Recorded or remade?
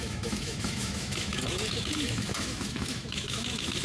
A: remade